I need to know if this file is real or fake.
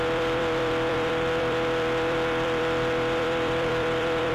fake